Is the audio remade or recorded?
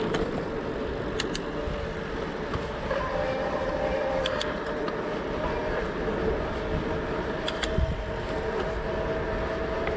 recorded